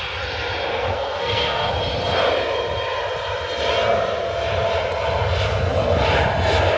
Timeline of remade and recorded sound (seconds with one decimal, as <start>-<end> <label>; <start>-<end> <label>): 0.0-0.7 recorded; 0.7-1.7 remade; 1.7-6.8 recorded